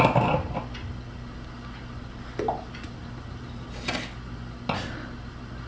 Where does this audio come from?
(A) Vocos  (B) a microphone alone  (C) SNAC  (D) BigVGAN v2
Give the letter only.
B